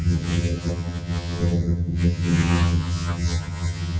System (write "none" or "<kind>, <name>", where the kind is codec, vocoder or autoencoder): vocoder, HiFi-GAN